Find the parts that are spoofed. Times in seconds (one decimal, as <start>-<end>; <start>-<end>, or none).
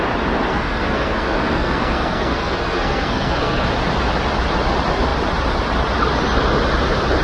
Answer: 0.5-3.7